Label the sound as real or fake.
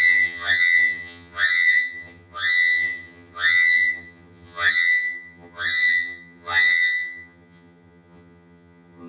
fake